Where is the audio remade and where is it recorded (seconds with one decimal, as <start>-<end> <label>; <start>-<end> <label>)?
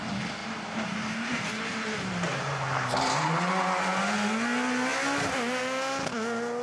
0.0-0.4 recorded; 0.4-3.5 remade; 3.5-6.6 recorded